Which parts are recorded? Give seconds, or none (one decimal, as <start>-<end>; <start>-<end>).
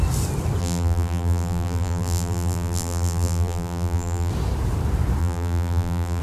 0.0-0.6; 4.3-5.2